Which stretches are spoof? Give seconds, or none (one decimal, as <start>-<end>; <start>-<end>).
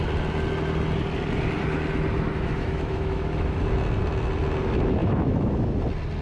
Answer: 2.3-3.6; 5.0-5.7